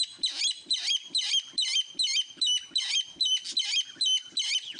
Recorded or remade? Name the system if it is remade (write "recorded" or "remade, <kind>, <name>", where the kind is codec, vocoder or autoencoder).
recorded